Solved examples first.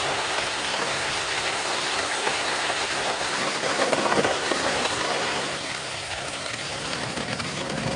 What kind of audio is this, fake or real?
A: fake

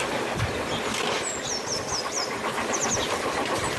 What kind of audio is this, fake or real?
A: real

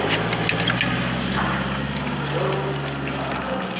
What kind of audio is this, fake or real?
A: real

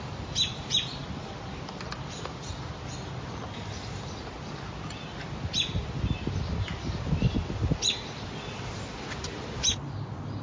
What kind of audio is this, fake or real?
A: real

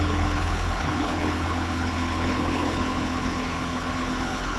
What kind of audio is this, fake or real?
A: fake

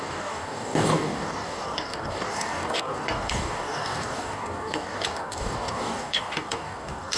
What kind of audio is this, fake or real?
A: fake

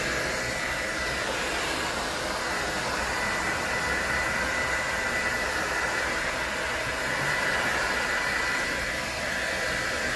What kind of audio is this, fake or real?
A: real